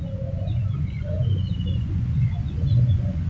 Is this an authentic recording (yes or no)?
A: no